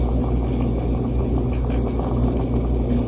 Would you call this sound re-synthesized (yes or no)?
no